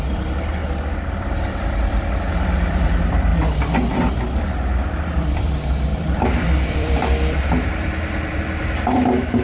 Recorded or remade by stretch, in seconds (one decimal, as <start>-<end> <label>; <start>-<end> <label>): 0.0-0.6 remade; 0.6-1.2 recorded; 1.2-3.3 remade; 3.3-5.0 recorded; 5.0-9.4 remade